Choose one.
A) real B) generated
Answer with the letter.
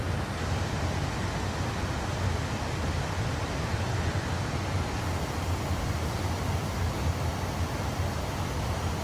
A